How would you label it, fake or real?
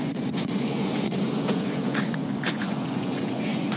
fake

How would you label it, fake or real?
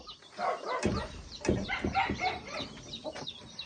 real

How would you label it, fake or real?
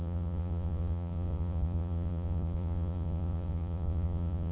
fake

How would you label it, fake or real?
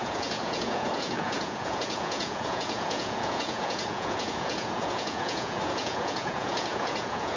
fake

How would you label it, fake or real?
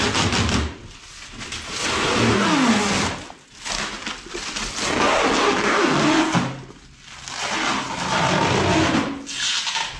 real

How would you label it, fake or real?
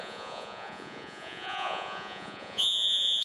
fake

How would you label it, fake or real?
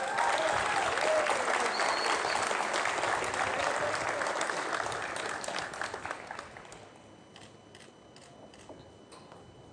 real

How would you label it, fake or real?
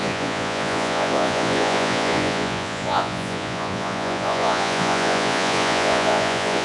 fake